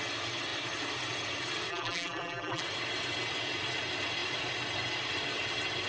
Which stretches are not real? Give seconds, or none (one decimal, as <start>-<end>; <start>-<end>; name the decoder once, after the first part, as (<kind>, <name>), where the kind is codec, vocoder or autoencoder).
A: 1.7-2.6 (vocoder, BigVGAN v2)